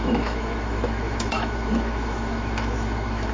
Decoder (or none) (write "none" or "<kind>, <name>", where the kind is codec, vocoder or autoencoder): autoencoder, DAC-VAE